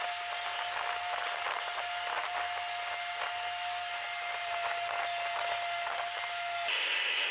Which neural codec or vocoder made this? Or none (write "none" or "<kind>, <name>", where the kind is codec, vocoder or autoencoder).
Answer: none